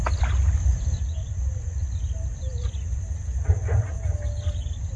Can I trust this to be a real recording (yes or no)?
yes